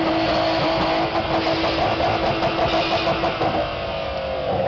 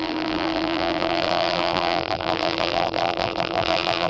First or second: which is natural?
first